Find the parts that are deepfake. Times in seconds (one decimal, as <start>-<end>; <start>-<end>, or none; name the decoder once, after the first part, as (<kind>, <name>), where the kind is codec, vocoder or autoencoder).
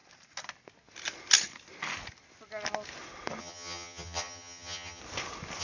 3.4-5.0 (vocoder, HiFi-GAN)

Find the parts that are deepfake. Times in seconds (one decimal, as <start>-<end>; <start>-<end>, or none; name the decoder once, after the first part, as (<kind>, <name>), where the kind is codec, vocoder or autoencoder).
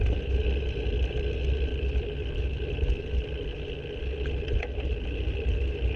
none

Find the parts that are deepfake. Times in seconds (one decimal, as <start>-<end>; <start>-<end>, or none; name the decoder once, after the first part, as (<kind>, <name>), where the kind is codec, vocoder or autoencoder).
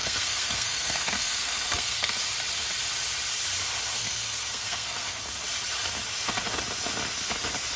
0.0-2.2 (codec, SNAC); 4.0-5.2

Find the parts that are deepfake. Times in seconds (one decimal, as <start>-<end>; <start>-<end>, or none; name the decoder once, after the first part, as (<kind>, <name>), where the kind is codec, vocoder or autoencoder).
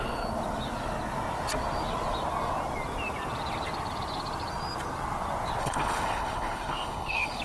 5.6-7.4 (codec, HILCodec)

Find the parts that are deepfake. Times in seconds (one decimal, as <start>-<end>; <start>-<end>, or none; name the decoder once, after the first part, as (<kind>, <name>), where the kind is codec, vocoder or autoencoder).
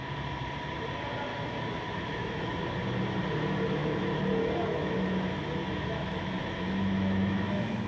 1.3-2.6 (autoencoder, DAC-VAE); 3.8-7.9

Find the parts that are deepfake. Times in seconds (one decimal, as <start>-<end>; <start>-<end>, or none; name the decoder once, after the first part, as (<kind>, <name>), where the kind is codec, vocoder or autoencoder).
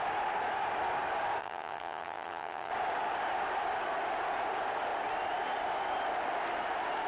1.4-2.7 (vocoder, HiFi-GAN)